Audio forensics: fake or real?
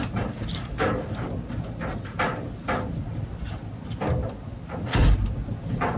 real